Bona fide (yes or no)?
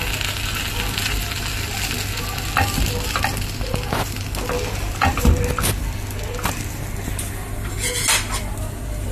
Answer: yes